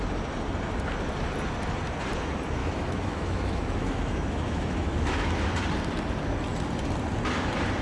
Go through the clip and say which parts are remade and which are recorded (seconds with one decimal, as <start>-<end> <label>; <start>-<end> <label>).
0.0-2.6 recorded; 2.6-5.4 remade; 5.4-7.8 recorded